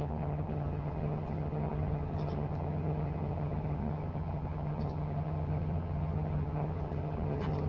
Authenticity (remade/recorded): remade